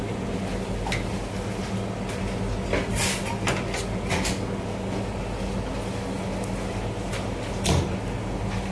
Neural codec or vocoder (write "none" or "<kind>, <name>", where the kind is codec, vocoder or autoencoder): none